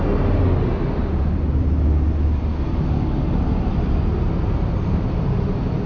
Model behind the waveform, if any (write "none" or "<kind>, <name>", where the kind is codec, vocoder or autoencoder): none